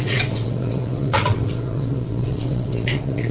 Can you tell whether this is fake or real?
fake